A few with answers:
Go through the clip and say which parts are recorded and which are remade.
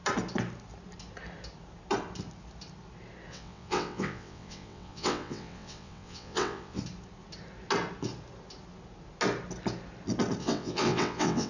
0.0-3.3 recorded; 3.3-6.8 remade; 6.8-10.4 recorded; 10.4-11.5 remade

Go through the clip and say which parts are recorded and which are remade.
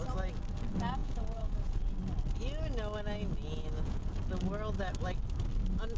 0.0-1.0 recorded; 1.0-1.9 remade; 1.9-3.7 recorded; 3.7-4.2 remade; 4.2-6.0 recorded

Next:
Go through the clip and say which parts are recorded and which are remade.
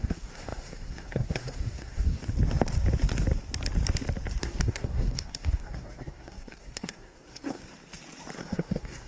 0.0-2.2 remade; 2.2-4.4 recorded; 4.4-7.6 remade; 7.6-8.4 recorded; 8.4-9.1 remade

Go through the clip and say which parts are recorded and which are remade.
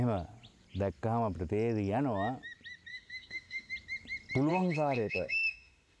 0.0-2.9 recorded; 2.9-3.7 remade; 3.7-4.5 recorded; 4.5-6.0 remade